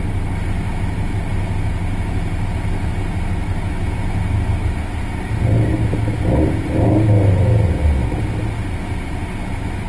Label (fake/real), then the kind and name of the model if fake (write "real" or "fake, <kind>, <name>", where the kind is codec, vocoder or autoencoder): real